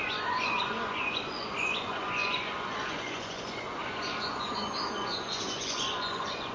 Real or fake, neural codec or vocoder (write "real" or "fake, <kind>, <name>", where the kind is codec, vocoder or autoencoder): fake, vocoder, Vocos